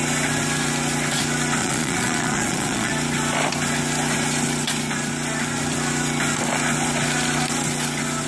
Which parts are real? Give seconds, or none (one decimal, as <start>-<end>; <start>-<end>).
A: 0.0-1.6; 2.9-8.3